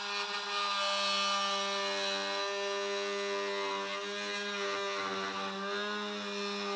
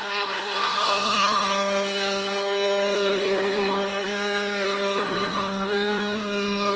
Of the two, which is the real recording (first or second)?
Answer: first